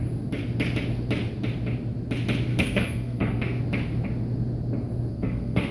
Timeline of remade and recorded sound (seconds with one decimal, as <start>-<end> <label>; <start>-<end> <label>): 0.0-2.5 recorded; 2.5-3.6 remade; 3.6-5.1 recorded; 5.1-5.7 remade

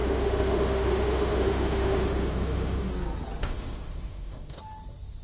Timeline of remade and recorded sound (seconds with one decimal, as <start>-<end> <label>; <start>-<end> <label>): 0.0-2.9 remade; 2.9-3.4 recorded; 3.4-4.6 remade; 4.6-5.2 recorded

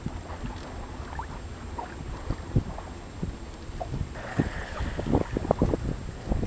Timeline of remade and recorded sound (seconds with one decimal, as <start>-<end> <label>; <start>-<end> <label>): 0.0-4.3 recorded; 4.3-4.8 remade; 4.8-6.5 recorded

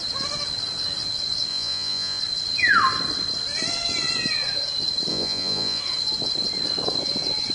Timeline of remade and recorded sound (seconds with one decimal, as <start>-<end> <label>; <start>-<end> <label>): 0.0-1.5 recorded; 1.5-2.2 remade; 2.2-5.1 recorded; 5.1-5.8 remade; 5.8-7.5 recorded